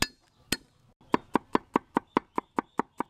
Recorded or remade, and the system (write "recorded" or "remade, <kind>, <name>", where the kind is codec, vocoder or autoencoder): recorded